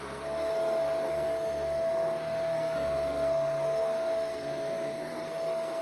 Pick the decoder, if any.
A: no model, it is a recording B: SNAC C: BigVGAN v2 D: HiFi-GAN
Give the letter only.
B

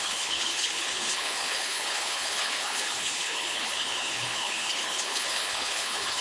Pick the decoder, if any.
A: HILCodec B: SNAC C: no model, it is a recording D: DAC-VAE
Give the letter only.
A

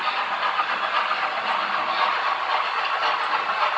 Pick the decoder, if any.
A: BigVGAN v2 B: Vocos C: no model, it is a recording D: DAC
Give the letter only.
C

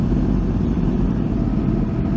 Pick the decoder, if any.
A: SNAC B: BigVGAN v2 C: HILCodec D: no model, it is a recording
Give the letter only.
D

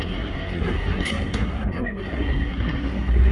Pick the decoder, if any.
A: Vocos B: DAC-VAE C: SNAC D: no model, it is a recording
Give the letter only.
C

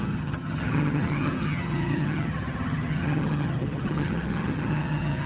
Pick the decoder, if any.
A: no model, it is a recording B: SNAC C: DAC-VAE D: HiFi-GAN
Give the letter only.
D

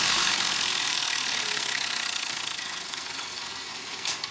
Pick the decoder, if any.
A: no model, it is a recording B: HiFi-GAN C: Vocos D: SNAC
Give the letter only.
D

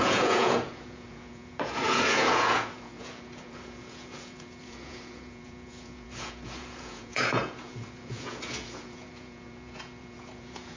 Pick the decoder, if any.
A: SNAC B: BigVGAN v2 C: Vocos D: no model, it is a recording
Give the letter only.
C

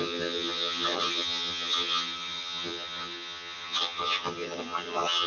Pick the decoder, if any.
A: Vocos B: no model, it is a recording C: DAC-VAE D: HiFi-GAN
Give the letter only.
D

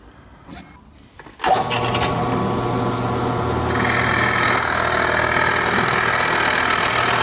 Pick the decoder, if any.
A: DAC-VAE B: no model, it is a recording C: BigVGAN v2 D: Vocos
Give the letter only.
B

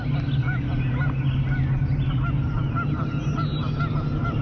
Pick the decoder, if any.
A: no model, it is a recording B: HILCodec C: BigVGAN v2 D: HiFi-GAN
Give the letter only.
A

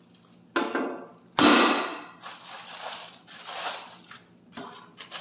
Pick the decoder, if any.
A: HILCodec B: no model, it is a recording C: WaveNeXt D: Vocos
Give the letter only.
B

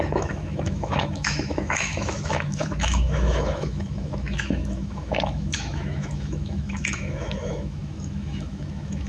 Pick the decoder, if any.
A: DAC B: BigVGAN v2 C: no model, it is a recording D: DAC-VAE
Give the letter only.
D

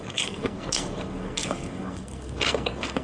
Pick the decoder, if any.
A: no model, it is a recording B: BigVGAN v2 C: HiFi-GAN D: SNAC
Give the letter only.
D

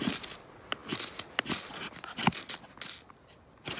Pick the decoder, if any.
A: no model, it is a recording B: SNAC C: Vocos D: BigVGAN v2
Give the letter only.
A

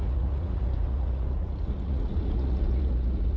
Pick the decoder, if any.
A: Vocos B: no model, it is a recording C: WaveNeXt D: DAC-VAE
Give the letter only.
A